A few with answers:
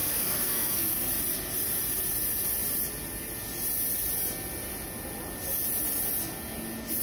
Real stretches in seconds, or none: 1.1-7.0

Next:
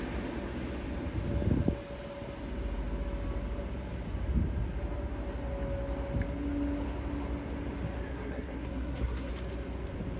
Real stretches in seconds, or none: 0.0-8.1; 9.3-10.2

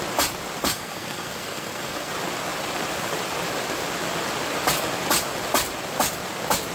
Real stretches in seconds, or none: 0.0-0.6; 2.1-6.7

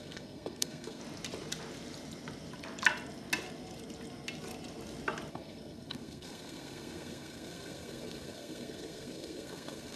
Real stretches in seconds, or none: 1.0-5.3

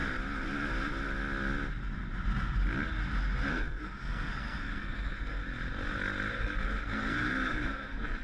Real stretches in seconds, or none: 0.0-3.5; 5.4-6.3

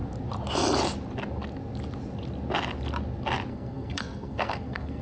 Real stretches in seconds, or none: 0.0-3.5

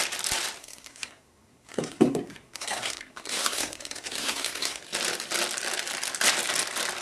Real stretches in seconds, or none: 0.0-0.6; 4.8-7.0

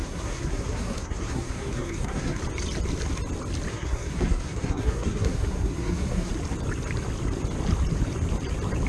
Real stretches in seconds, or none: 2.4-3.7; 6.3-8.9